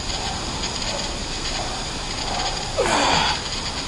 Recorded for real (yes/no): yes